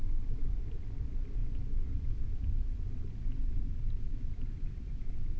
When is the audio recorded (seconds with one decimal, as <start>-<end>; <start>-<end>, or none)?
0.0-5.4